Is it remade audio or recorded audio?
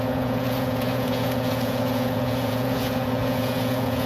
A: remade